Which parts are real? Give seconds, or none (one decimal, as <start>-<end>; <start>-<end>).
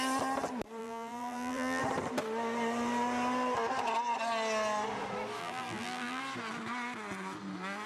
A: 0.0-0.8; 1.8-5.4; 6.2-7.9